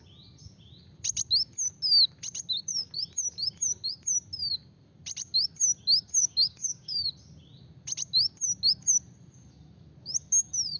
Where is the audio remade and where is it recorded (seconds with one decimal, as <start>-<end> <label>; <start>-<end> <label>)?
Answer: 0.0-6.2 recorded; 6.2-7.0 remade; 7.0-10.8 recorded